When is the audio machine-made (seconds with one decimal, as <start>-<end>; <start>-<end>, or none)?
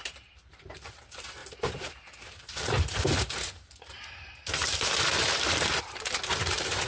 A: 0.0-6.9